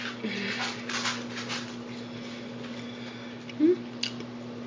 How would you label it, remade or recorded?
recorded